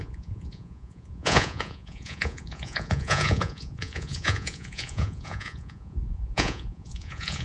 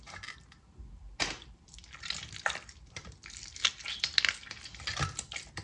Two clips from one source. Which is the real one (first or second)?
second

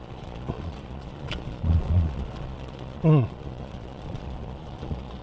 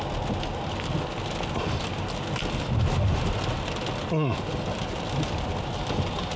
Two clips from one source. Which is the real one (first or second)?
second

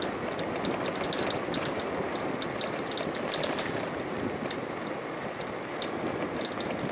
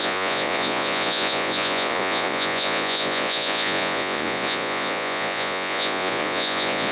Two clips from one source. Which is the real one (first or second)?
first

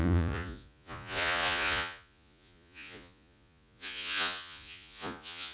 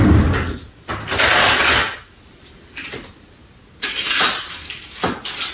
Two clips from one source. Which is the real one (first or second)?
second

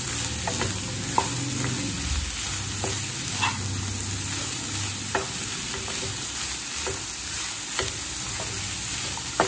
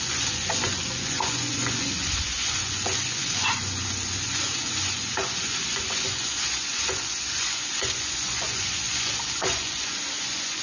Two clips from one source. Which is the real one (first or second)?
first